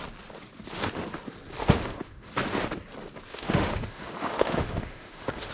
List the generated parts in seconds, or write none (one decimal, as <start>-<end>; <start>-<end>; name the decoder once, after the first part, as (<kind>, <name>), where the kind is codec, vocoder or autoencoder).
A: 1.6-2.3 (autoencoder, DAC-VAE); 3.3-5.5